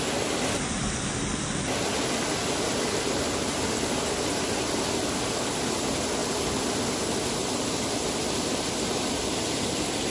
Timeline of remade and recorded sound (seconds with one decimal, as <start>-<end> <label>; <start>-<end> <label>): 0.0-10.1 recorded